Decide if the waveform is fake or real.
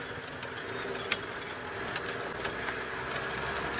real